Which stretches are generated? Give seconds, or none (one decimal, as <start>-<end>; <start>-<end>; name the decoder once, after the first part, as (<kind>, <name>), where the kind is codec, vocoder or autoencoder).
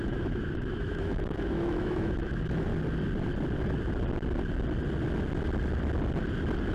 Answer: 0.0-2.7 (autoencoder, DAC-VAE)